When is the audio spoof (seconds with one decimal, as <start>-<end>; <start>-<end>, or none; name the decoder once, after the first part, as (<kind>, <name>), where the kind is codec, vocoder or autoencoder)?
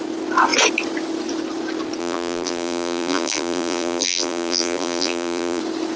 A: 2.0-5.6 (vocoder, BigVGAN v2)